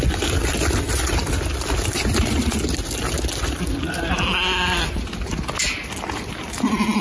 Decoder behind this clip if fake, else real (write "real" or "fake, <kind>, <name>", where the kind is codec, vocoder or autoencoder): real